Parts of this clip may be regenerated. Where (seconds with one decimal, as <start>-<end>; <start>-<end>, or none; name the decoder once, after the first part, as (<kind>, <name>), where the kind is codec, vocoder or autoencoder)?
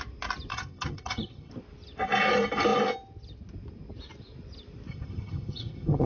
0.5-1.5 (vocoder, HiFi-GAN); 4.9-6.1